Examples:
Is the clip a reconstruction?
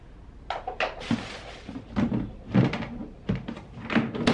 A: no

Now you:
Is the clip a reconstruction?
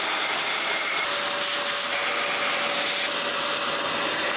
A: no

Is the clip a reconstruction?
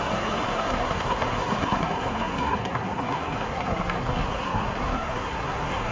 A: yes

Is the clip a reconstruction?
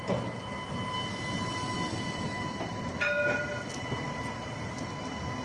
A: no